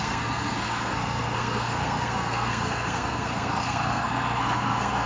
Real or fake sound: fake